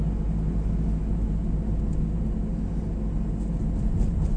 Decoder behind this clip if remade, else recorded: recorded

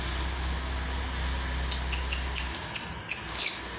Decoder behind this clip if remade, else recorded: recorded